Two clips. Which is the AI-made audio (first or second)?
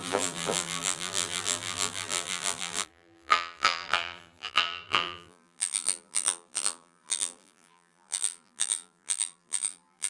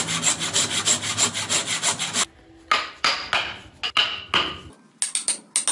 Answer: first